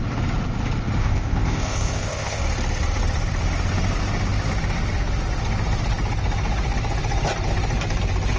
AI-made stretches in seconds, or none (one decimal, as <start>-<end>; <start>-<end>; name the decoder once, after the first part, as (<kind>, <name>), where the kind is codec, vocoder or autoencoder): 1.0-2.4 (codec, ZipCodec)